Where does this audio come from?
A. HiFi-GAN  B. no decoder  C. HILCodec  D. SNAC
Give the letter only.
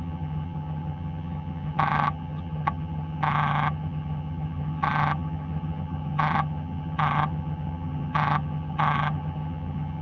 A